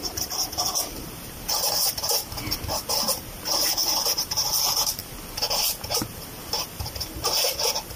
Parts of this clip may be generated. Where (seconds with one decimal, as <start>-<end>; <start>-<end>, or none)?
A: 0.0-2.2; 2.9-5.0; 5.9-8.0